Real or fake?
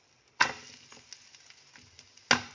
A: real